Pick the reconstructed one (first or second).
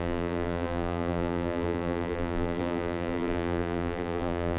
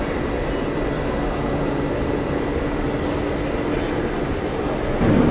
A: first